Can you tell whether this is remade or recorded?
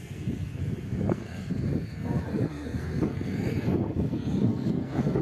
remade